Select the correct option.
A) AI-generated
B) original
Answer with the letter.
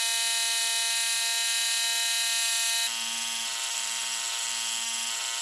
B